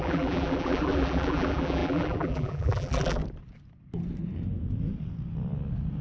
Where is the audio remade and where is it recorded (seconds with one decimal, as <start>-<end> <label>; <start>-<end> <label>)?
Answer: 0.0-3.2 remade; 3.2-6.0 recorded